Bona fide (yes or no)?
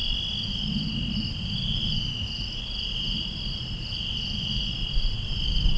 yes